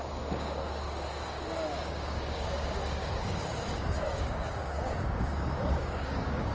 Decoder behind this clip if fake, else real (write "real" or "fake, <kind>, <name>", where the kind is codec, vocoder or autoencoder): fake, codec, DAC